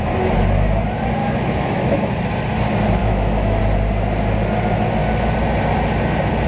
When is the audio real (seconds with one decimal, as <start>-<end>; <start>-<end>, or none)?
0.0-1.2; 2.1-3.0; 3.6-6.5